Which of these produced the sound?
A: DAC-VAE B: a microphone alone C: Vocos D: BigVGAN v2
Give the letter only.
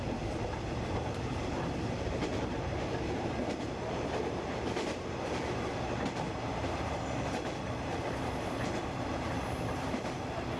D